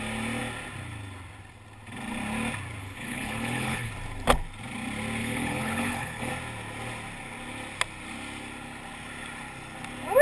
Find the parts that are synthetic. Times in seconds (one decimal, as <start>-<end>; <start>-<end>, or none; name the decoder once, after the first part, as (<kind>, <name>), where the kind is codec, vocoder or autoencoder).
2.8-3.9 (codec, HILCodec); 5.2-6.3